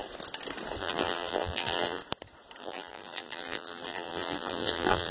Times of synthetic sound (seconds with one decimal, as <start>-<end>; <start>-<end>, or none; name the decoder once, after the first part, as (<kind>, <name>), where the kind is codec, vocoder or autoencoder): 0.8-2.0 (vocoder, BigVGAN v2); 2.6-5.1